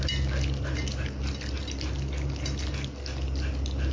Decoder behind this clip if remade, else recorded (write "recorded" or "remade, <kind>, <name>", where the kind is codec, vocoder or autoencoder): recorded